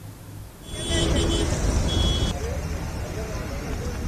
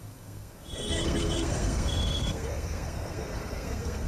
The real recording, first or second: first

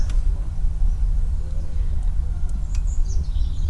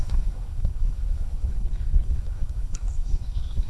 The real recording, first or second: first